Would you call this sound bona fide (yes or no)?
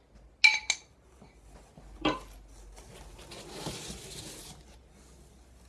yes